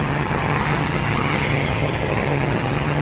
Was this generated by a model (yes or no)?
yes